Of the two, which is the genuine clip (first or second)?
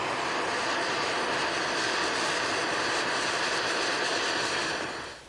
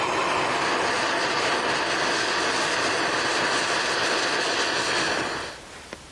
second